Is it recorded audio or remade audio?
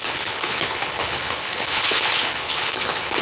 remade